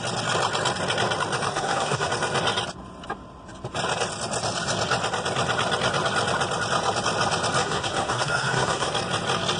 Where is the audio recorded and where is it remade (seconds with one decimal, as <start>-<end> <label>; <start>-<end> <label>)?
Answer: 0.0-1.5 recorded; 1.5-2.1 remade; 2.1-7.6 recorded; 7.6-8.9 remade; 8.9-9.6 recorded